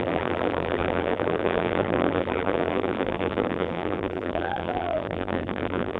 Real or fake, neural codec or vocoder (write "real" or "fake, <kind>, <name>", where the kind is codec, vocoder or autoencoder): fake, vocoder, BigVGAN v2